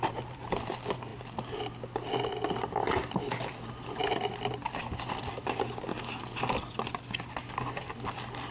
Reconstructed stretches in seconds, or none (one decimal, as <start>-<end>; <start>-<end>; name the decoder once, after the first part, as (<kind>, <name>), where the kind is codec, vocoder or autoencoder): none